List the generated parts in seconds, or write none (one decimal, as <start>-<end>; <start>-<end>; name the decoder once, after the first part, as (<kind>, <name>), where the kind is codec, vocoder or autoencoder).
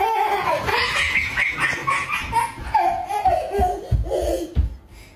none